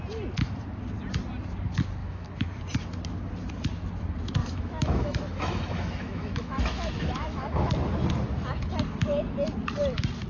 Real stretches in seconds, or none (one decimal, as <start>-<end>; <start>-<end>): 0.0-2.0; 2.6-4.4; 7.7-10.3